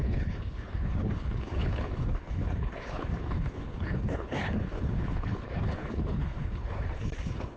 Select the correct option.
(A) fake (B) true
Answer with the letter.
A